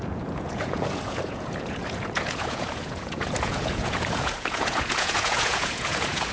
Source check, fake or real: fake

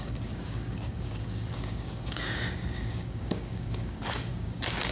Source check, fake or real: fake